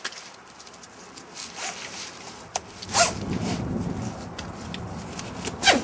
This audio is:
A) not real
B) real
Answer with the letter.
B